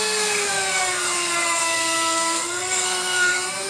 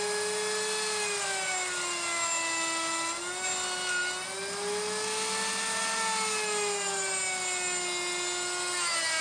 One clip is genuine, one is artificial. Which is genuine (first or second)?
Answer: second